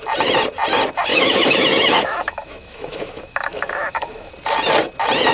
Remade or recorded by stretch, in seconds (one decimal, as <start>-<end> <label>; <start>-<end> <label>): 0.0-1.1 recorded; 1.1-4.3 remade; 4.3-5.3 recorded